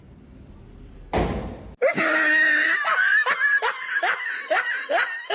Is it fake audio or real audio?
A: real